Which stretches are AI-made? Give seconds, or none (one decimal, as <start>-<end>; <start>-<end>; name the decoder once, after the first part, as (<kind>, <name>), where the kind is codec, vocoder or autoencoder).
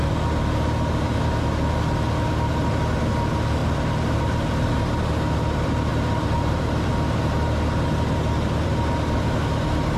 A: 3.6-4.9 (vocoder, BigVGAN v2); 5.9-6.9